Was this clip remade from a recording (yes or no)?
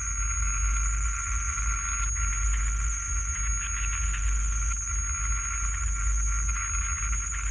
no